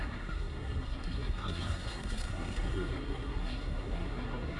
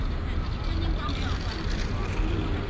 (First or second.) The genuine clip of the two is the second